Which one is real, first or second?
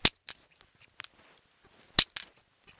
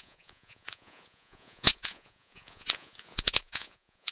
first